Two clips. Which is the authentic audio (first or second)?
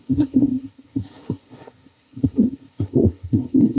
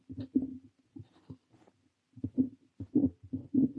second